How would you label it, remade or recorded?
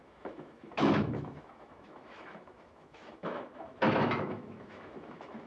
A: remade